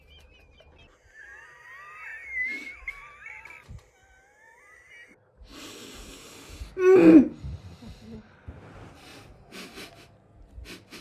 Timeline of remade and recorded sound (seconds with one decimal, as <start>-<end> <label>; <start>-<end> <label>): 0.0-5.5 recorded; 5.5-6.1 remade; 6.1-11.0 recorded